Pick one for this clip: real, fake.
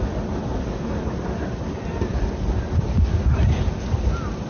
real